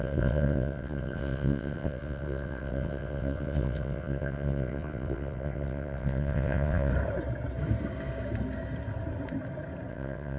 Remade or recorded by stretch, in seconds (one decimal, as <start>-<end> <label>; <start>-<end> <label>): 0.0-6.9 remade; 6.9-9.9 recorded; 9.9-10.4 remade